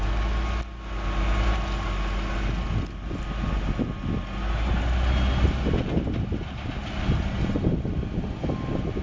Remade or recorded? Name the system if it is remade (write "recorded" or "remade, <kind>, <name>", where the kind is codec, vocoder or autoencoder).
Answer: recorded